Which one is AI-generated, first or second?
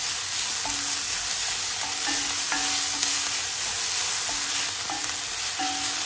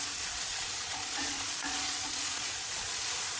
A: second